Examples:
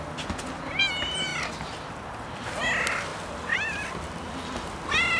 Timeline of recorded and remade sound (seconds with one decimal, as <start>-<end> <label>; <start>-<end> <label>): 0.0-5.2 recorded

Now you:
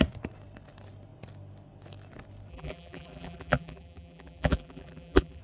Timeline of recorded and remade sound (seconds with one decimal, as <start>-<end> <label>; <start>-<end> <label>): 0.0-2.5 recorded; 2.5-5.4 remade

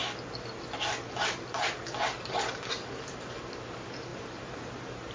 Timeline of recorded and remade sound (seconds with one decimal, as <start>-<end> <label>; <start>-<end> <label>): 0.0-3.1 recorded; 3.1-5.1 remade

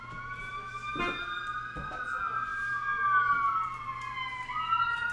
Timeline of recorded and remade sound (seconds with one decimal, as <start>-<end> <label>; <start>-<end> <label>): 0.0-5.1 recorded

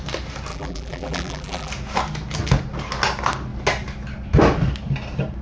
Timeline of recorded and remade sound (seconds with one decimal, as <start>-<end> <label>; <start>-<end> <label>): 0.0-0.5 recorded; 0.5-1.7 remade; 1.7-5.4 recorded

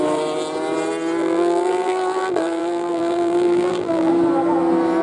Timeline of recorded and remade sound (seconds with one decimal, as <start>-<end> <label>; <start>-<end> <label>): 0.0-1.2 recorded; 1.2-4.1 remade; 4.1-5.0 recorded